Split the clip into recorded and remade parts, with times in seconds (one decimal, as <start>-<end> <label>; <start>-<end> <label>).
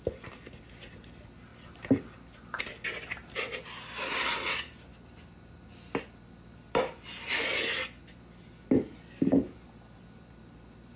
0.0-11.0 recorded